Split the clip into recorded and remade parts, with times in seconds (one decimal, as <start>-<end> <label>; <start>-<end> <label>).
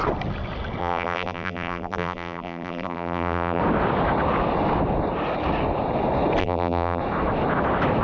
0.0-0.8 recorded; 0.8-3.6 remade; 3.6-6.4 recorded; 6.4-7.0 remade; 7.0-8.0 recorded